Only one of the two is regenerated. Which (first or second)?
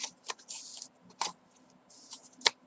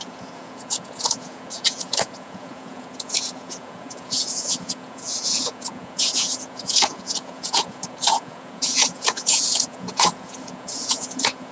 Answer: second